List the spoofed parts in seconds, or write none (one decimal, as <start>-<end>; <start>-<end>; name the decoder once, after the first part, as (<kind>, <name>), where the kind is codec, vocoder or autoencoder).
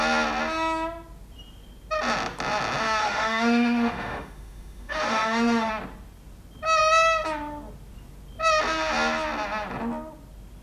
3.0-5.7 (autoencoder, DAC-VAE)